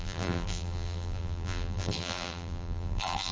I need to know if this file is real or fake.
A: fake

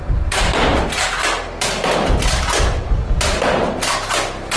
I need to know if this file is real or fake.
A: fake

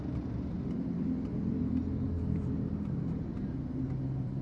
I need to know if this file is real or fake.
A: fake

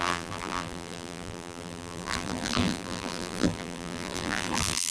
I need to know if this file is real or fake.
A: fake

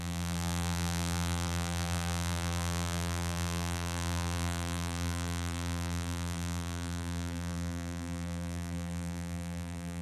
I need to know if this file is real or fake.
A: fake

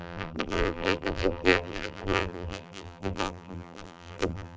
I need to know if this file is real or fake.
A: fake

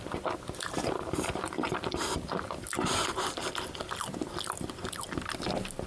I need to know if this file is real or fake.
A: real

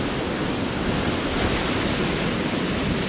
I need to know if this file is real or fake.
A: real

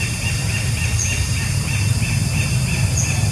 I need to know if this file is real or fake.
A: real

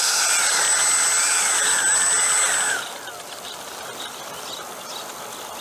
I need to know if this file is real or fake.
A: real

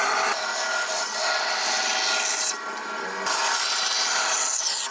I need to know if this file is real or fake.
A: real